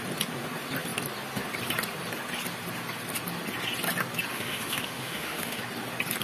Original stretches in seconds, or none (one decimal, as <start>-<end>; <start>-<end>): 0.0-4.3; 5.6-6.2